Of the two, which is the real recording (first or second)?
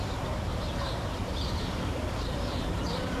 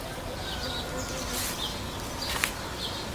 second